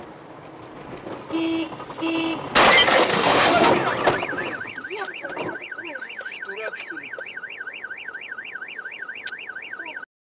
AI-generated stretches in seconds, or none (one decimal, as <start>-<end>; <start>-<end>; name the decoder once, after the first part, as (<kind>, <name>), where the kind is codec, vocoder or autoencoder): 3.1-3.7 (autoencoder, DAC-VAE)